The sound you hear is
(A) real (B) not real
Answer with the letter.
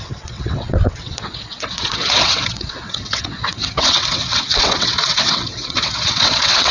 B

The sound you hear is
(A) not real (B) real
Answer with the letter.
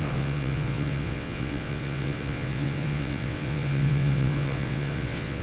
A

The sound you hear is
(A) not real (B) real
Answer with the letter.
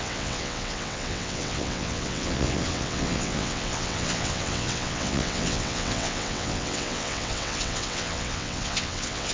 A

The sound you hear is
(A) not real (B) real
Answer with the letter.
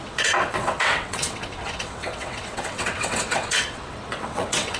A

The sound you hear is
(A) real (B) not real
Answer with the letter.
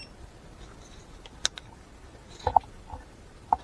A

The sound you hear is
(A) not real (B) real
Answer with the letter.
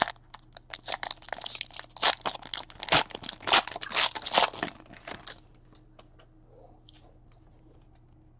B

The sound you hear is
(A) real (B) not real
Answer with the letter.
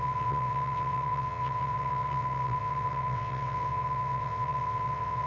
B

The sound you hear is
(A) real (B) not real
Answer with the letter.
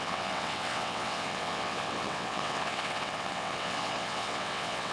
B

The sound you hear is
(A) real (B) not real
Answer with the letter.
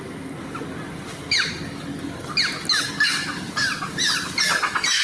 A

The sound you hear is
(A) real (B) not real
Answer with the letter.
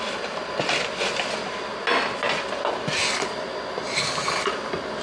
A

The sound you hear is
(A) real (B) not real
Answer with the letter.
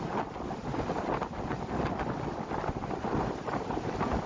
A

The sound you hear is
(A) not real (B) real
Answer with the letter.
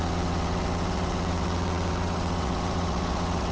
A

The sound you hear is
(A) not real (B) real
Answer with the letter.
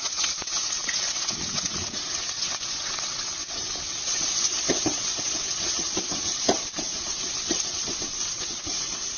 A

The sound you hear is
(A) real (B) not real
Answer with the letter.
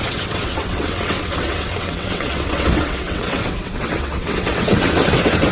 B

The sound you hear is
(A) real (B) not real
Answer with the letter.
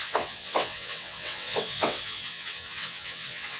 B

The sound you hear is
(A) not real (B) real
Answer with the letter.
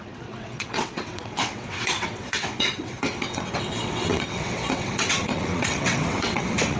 A